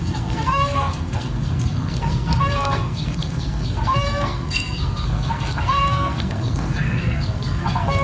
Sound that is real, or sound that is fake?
fake